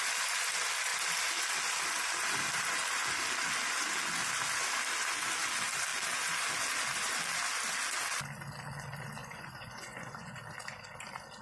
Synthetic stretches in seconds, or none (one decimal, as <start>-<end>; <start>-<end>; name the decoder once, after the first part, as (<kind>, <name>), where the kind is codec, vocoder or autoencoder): 9.2-10.4 (vocoder, Vocos)

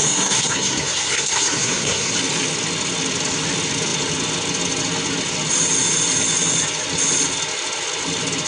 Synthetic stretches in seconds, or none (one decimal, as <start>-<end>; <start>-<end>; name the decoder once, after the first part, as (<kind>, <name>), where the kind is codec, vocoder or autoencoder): 0.0-2.1 (codec, SNAC)